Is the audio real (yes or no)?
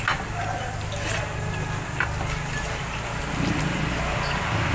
yes